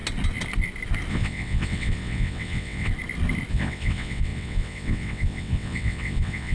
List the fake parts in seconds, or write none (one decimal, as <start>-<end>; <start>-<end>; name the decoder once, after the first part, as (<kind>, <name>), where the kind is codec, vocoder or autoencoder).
1.1-2.9 (vocoder, WaveNeXt); 3.5-6.5